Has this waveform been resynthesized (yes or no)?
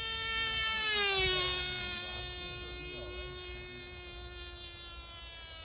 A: no